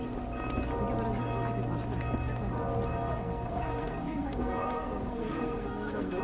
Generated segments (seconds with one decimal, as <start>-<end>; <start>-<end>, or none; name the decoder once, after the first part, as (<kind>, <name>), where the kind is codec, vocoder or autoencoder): 3.1-6.2 (codec, SNAC)